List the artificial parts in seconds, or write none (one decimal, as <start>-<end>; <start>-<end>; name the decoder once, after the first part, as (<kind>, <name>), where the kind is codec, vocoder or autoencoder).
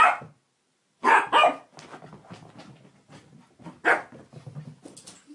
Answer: none